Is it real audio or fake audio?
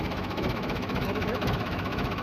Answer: fake